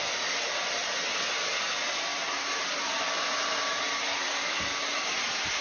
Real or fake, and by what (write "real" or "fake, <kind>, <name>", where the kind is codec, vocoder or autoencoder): real